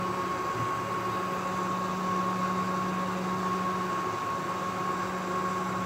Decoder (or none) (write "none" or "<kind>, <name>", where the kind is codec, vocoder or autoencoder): none